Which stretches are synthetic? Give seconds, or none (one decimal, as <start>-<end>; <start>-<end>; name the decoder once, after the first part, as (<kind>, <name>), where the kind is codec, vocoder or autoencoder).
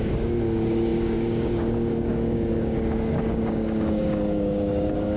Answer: 0.0-5.2 (codec, DAC)